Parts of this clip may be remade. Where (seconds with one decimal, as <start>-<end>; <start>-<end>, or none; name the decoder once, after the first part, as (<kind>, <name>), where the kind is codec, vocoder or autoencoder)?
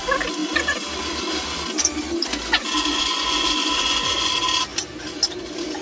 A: 2.9-4.3 (vocoder, Vocos)